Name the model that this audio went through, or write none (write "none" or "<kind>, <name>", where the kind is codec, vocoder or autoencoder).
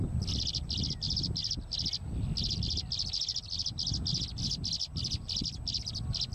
none